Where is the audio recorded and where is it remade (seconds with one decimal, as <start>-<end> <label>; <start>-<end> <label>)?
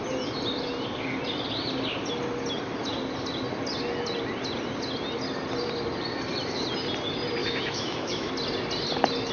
0.0-7.4 recorded; 7.4-8.3 remade; 8.3-9.3 recorded